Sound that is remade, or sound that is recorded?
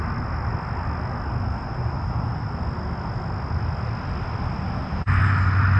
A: recorded